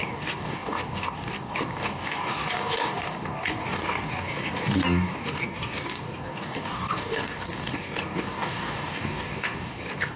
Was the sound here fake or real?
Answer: fake